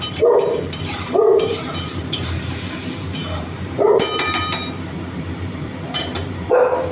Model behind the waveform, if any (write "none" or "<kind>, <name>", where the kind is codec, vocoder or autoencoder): vocoder, BigVGAN v2